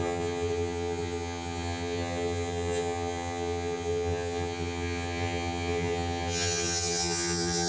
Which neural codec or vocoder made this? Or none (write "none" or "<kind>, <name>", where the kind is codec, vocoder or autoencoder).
vocoder, HiFi-GAN